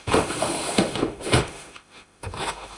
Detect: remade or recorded remade